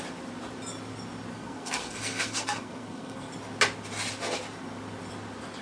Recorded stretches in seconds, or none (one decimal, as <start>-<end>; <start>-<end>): 0.0-1.3; 3.3-5.6